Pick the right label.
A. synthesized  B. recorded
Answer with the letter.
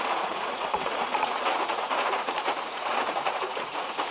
A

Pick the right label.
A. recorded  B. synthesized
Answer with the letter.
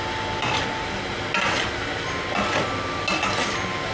A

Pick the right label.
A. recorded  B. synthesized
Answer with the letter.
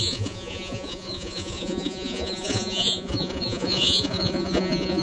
B